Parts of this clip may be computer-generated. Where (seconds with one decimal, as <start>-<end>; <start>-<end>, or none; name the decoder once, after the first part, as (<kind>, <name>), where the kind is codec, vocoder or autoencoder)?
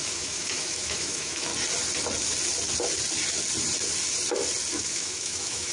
0.0-1.5 (autoencoder, DAC-VAE); 4.7-5.7